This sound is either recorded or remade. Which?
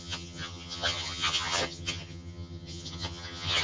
remade